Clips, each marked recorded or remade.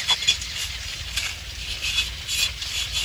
recorded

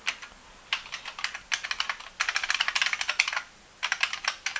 recorded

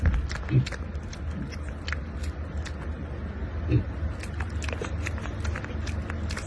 recorded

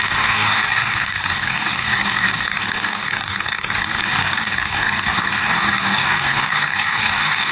remade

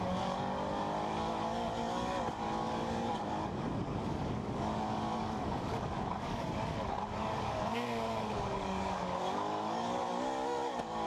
remade